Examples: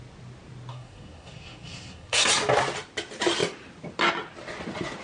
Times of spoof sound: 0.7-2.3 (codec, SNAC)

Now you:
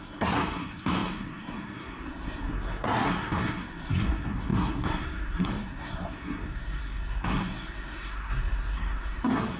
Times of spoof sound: 0.0-9.6 (codec, SNAC)

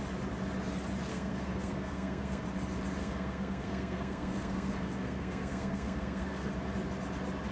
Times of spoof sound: 1.1-2.4 (codec, SNAC); 3.0-6.5

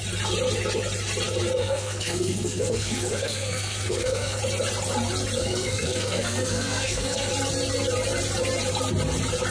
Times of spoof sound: 1.6-4.4 (codec, SNAC); 5.4-7.3

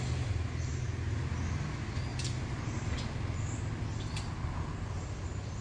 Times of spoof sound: none